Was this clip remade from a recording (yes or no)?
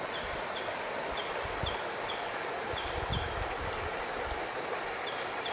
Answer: no